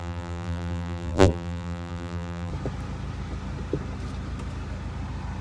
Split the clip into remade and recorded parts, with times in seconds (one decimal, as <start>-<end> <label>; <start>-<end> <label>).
0.0-2.5 remade; 2.5-5.4 recorded